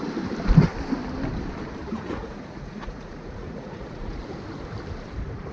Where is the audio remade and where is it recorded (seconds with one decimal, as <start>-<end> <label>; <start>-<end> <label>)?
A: 0.0-1.8 recorded; 1.8-4.2 remade; 4.2-5.5 recorded